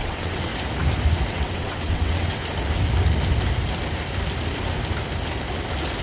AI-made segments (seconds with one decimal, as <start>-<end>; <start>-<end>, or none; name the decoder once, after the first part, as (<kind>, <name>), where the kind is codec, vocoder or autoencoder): 0.0-0.5 (vocoder, WaveNeXt); 1.3-2.4